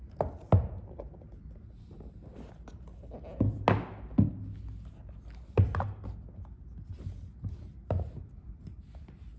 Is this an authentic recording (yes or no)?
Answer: yes